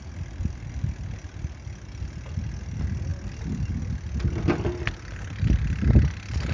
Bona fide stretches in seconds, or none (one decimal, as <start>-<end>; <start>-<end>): 0.0-6.5